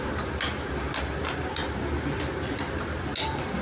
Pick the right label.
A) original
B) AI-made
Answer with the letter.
A